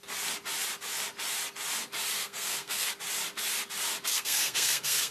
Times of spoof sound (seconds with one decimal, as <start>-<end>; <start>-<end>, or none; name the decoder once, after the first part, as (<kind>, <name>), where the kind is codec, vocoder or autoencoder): 2.2-2.9 (codec, SNAC); 4.1-5.1